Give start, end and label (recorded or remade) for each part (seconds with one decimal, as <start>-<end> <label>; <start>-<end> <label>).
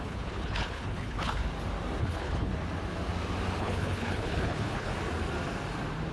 0.0-1.4 remade; 1.4-2.0 recorded; 2.0-2.5 remade; 2.5-3.6 recorded; 3.6-4.9 remade; 4.9-6.1 recorded